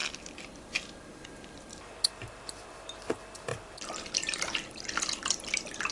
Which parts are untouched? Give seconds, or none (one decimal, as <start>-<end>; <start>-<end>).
2.7-3.5